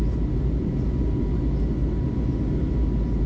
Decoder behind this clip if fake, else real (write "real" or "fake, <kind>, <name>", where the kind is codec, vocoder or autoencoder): real